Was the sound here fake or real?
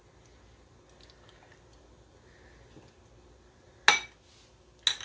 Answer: real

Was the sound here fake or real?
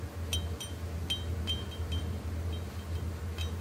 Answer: real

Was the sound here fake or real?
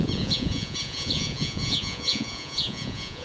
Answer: fake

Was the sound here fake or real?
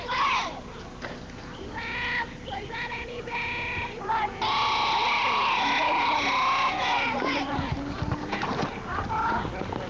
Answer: real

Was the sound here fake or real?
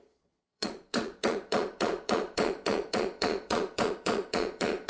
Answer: fake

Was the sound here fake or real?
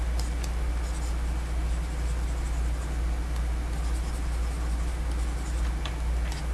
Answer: real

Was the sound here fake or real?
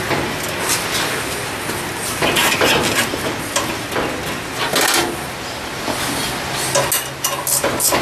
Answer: real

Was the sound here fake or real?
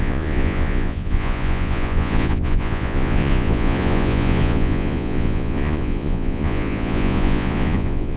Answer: fake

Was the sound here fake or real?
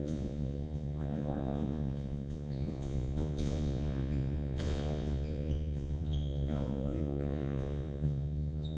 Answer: fake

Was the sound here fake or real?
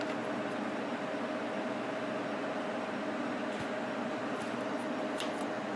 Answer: real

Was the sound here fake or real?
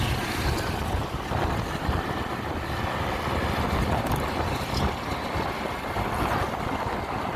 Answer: real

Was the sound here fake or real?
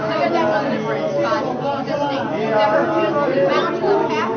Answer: real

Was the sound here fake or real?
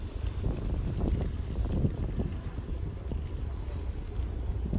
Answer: real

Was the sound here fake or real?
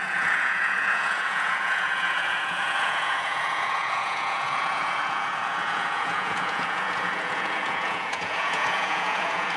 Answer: fake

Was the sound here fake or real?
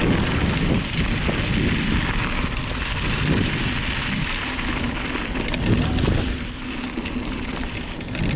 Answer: real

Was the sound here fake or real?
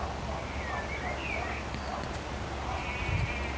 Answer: real